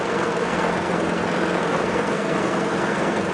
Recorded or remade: remade